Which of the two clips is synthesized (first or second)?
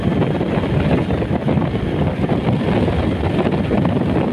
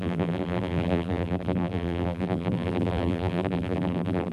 second